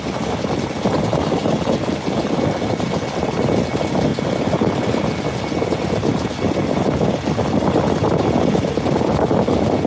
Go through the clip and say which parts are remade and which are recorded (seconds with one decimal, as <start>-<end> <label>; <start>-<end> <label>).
0.0-9.9 recorded